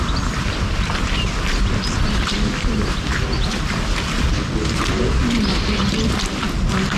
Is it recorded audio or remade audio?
recorded